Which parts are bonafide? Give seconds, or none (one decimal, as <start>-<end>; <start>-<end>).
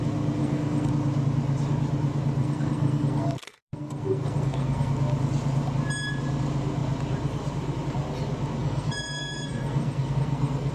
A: 0.0-0.4; 0.9-2.4; 4.9-8.6